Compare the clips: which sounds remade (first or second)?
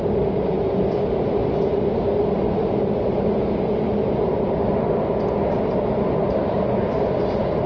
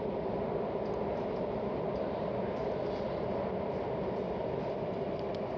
second